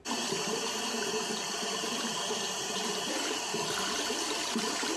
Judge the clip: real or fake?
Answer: real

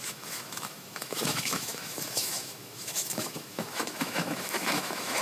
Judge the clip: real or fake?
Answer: fake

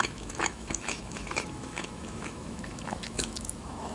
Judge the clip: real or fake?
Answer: fake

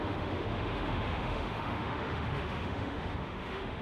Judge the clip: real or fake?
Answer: fake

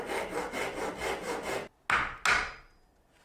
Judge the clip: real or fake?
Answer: real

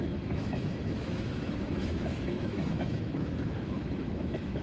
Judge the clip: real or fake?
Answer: fake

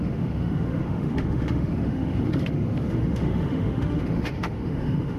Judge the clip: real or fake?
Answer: fake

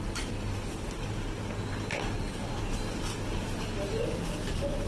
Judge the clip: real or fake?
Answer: real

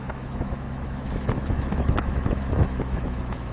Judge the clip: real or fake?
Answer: fake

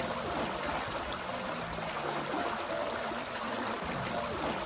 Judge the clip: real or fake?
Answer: real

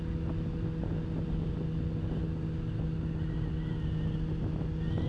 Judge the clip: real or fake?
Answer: real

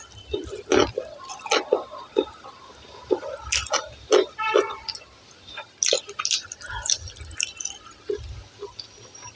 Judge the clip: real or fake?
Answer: real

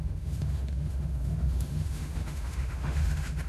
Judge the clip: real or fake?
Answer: fake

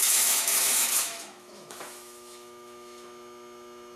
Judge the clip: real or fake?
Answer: fake